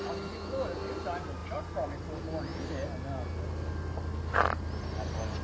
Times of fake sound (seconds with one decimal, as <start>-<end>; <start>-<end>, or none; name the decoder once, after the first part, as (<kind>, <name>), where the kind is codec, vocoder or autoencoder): none